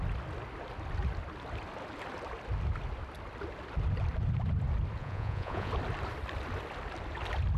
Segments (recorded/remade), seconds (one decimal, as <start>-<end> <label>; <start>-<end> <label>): 0.0-5.0 recorded; 5.0-5.7 remade; 5.7-7.6 recorded